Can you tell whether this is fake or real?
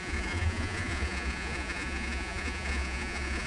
fake